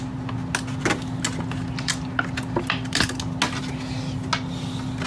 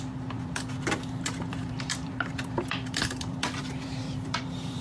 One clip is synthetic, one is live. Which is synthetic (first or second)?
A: second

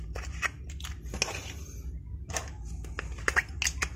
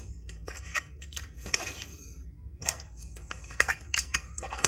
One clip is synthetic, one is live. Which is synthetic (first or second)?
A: second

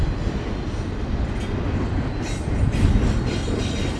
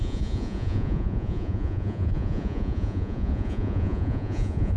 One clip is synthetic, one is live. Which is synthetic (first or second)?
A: second